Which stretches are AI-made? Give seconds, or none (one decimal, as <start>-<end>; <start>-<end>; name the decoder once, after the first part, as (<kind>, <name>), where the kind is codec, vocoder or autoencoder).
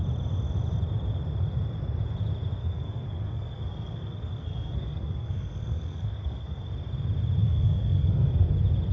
2.6-6.7 (codec, SNAC); 7.4-8.5